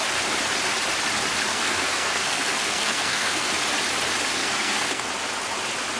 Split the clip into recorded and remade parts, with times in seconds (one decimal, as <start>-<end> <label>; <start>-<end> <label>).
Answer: 0.0-1.5 recorded; 1.5-3.5 remade; 3.5-4.4 recorded; 4.4-5.1 remade; 5.1-6.0 recorded